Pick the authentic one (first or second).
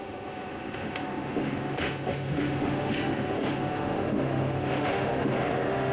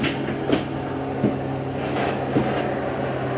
second